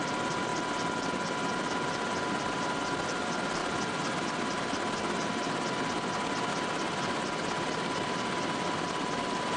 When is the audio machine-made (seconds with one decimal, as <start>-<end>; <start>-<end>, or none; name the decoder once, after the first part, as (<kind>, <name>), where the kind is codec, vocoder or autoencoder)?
0.0-0.5 (vocoder, BigVGAN v2); 1.5-3.6; 6.5-9.6